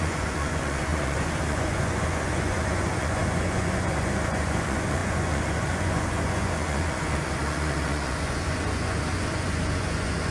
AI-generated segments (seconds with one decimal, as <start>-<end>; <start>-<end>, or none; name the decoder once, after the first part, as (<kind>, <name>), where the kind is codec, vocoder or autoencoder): 0.0-10.3 (vocoder, Vocos)